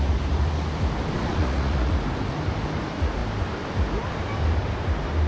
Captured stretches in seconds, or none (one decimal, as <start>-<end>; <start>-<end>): 0.0-1.2; 1.9-5.3